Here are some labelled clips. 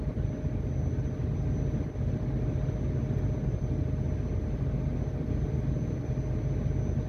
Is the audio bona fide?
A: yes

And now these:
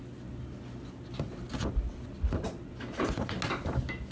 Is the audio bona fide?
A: yes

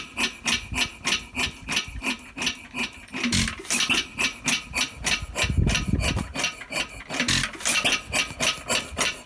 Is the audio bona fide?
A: yes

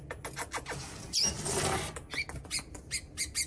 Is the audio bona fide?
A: yes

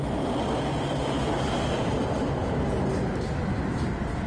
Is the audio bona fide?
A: yes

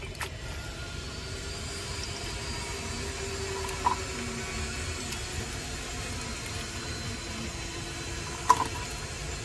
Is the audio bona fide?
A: yes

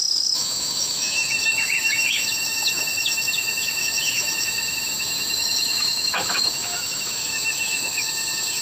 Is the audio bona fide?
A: no